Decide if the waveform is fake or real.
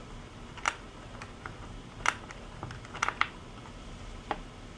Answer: real